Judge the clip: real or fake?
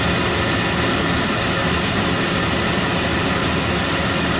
real